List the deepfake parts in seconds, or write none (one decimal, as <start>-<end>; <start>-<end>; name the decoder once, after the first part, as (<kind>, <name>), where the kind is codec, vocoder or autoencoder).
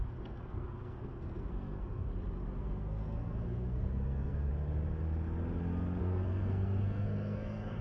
0.0-2.1 (codec, SNAC); 2.6-4.5; 6.0-7.8